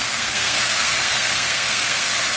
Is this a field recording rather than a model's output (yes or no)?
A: no